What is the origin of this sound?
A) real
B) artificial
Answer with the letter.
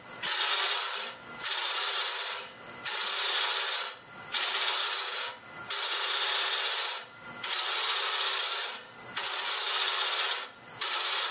A